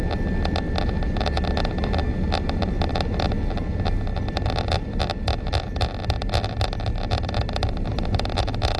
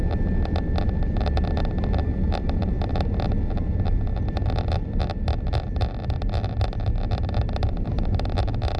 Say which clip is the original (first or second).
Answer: first